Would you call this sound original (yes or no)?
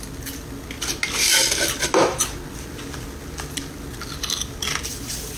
yes